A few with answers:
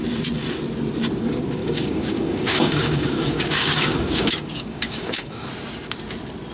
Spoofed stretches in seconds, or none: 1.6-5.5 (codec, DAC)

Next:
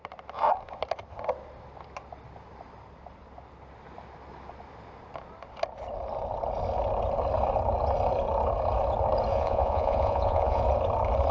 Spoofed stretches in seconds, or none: 9.3-10.6 (vocoder, Vocos)

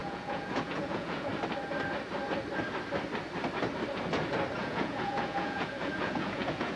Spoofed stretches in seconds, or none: 0.0-1.3 (vocoder, Vocos); 4.6-6.8